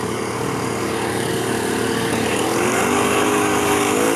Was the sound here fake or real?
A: fake